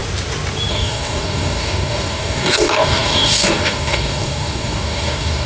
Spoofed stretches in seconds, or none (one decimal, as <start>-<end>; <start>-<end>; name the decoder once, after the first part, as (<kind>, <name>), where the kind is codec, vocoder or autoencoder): 0.7-5.5 (codec, DAC)